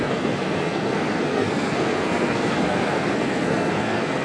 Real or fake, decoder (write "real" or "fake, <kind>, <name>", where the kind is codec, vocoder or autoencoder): fake, codec, SNAC